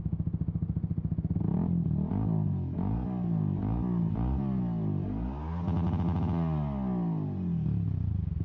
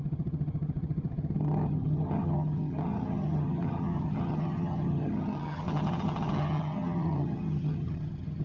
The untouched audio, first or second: first